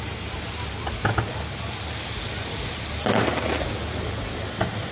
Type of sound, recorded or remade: recorded